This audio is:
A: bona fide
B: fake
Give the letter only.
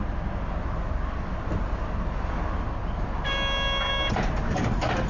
A